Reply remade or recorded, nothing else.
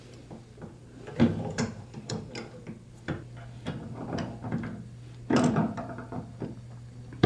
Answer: remade